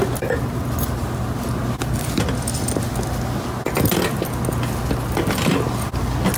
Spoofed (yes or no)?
no